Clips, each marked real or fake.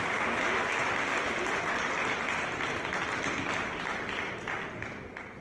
real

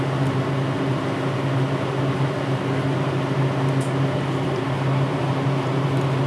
real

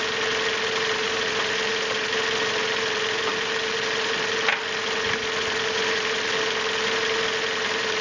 real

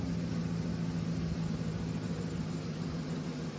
real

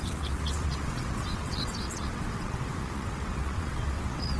fake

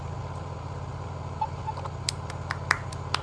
real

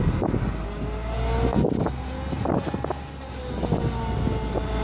real